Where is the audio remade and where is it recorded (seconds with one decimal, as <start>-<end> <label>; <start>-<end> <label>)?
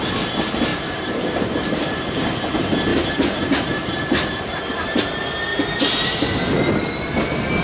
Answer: 0.0-0.7 recorded; 0.7-2.4 remade; 2.4-2.9 recorded; 2.9-5.0 remade; 5.0-5.5 recorded; 5.5-6.7 remade; 6.7-7.6 recorded